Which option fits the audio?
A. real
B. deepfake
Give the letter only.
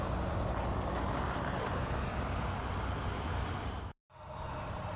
A